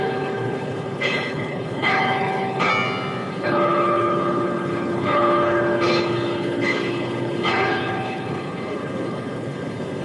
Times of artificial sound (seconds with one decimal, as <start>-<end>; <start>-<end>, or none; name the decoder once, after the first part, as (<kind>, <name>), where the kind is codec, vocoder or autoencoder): 0.0-2.7 (codec, HILCodec); 3.3-10.0